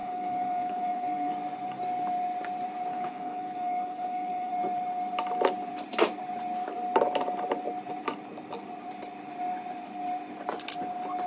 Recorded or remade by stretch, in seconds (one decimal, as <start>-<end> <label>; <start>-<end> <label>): 0.0-1.3 remade; 1.3-2.9 recorded; 2.9-4.5 remade; 4.5-11.3 recorded